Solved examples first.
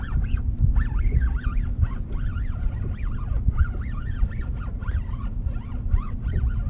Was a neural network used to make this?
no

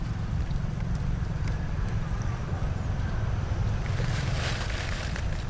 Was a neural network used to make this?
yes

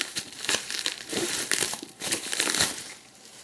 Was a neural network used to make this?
yes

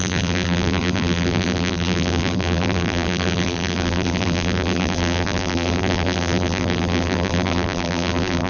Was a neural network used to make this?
yes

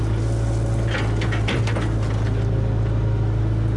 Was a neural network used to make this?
no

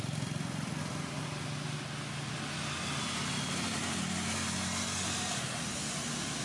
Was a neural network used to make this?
no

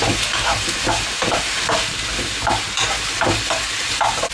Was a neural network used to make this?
yes